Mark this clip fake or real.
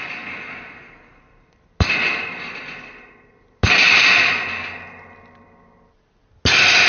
real